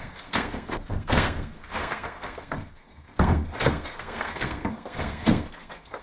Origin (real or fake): fake